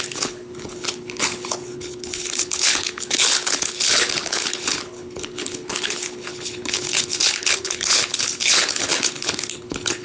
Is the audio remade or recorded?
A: remade